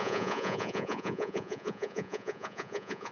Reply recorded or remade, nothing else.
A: remade